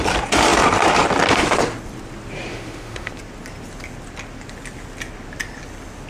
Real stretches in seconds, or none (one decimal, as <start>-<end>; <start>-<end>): 0.0-2.5; 3.1-6.1